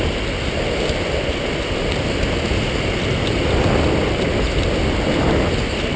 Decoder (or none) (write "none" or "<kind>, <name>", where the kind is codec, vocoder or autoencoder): none